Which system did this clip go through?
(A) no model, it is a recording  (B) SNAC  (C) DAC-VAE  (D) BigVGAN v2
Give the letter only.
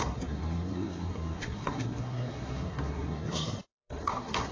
B